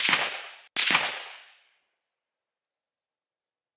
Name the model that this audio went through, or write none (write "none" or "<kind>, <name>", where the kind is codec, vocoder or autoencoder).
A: none